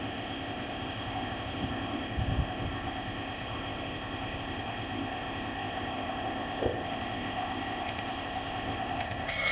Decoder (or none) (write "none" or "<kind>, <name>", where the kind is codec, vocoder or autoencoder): codec, ZipCodec